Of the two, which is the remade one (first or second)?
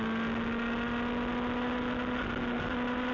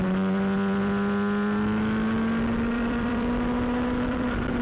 second